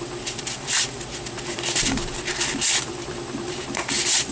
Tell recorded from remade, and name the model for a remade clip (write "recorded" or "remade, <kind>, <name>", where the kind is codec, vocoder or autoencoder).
remade, vocoder, BigVGAN v2